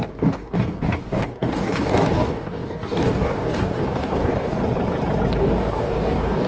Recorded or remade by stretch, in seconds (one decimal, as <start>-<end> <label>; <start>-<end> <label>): 0.0-4.6 remade; 4.6-5.4 recorded; 5.4-6.5 remade